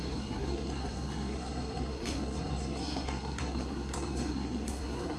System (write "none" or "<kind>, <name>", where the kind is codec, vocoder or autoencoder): codec, SNAC